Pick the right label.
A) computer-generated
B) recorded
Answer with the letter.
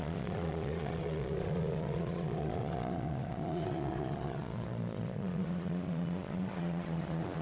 A